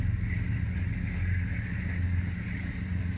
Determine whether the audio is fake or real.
real